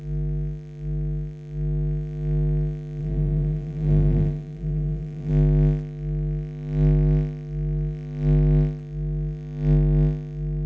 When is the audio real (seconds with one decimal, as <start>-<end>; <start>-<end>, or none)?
0.0-3.0; 5.3-10.7